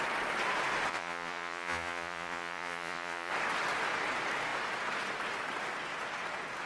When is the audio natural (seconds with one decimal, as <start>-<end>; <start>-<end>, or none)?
0.0-0.9; 3.3-6.7